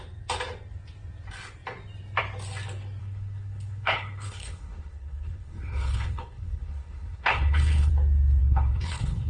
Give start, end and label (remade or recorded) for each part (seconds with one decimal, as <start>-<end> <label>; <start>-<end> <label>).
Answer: 0.0-3.0 recorded; 3.0-7.9 remade; 7.9-8.4 recorded; 8.4-9.3 remade